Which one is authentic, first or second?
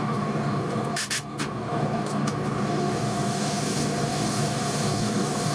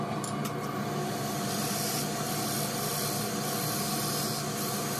second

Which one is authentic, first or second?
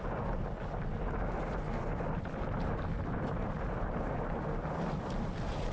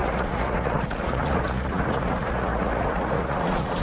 first